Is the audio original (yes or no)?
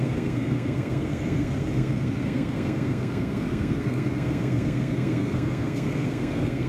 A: no